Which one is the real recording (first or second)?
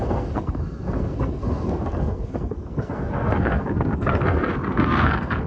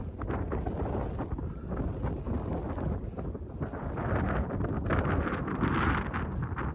second